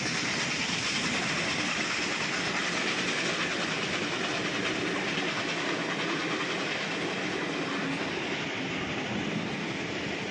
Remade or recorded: recorded